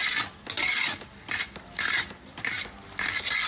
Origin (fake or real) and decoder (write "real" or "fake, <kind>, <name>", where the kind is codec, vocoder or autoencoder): real